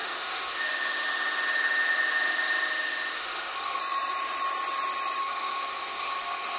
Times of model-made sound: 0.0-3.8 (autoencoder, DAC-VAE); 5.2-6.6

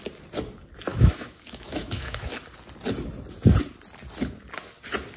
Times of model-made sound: 0.9-2.3 (autoencoder, DAC-VAE)

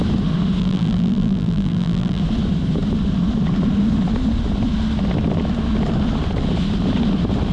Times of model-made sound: 0.6-2.2 (vocoder, BigVGAN v2)